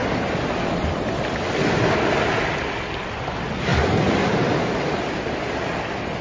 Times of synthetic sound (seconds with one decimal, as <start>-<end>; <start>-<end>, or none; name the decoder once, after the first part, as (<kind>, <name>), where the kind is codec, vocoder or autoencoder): none

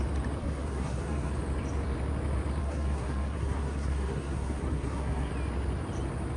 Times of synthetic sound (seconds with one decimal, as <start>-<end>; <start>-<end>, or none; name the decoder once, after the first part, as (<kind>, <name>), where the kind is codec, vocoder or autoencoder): 0.4-1.3 (codec, SNAC); 2.6-5.3

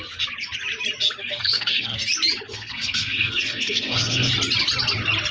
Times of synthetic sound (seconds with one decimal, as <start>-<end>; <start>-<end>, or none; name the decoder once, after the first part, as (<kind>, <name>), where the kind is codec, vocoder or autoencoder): 1.2-2.1 (codec, SNAC); 2.5-4.3